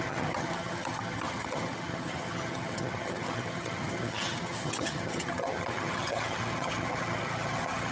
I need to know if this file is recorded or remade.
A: remade